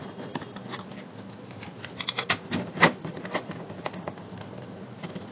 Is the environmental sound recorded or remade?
recorded